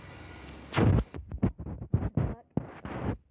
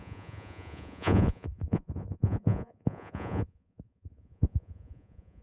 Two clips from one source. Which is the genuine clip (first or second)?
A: first